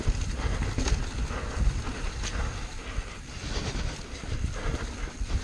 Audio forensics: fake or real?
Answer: real